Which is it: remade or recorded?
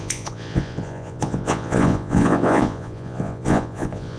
remade